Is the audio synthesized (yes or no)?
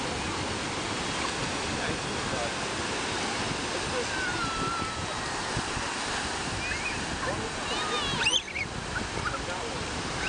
no